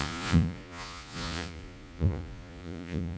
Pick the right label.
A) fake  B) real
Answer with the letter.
A